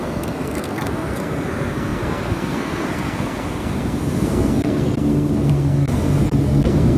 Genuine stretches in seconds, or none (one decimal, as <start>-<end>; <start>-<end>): none